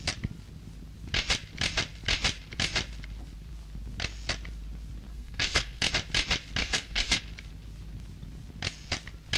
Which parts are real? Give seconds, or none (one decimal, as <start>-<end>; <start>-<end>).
0.0-5.1; 5.9-6.6; 7.2-9.4